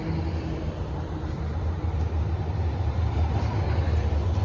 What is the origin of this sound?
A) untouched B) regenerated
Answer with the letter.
A